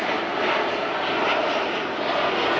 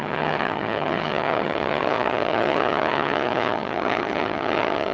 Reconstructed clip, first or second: second